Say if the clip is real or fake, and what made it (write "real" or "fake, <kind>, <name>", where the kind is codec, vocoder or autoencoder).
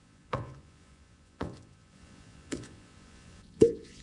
fake, vocoder, Vocos